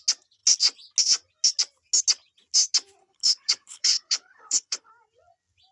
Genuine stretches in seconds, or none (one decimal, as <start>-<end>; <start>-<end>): 0.0-3.0; 4.9-5.7